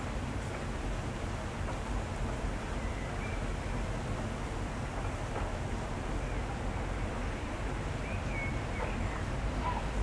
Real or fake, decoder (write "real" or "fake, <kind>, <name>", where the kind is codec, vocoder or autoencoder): real